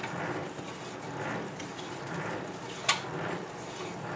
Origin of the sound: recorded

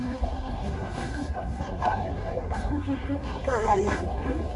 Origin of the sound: remade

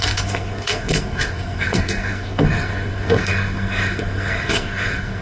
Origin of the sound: remade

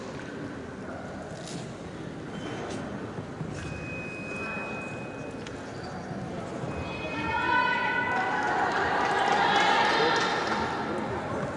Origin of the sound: recorded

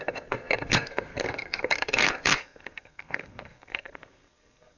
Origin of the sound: remade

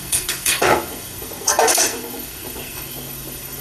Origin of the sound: remade